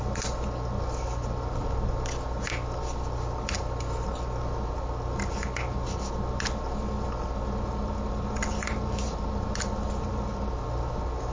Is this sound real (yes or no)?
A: yes